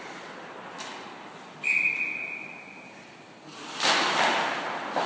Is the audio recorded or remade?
recorded